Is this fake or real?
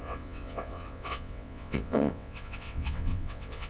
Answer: fake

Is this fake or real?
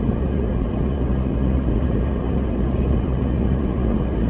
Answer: fake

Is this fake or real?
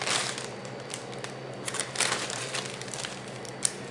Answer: real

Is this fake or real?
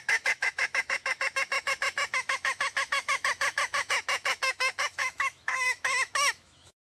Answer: fake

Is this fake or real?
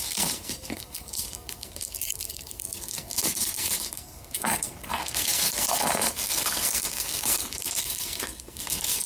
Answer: fake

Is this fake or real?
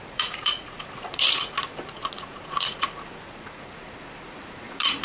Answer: fake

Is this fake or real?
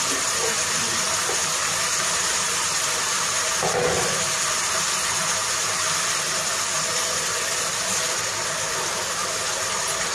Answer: real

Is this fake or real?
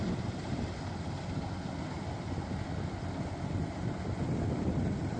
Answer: real